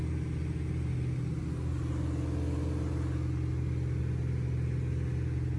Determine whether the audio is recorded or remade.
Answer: recorded